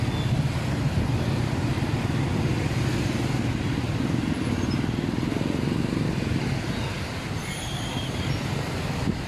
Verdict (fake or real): real